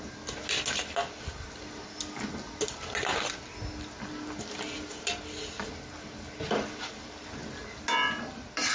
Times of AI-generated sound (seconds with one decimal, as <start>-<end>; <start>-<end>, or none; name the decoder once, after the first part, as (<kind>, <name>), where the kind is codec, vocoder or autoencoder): none